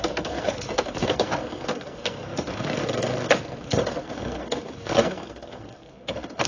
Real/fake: fake